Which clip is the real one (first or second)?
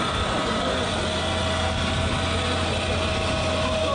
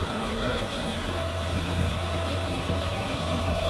first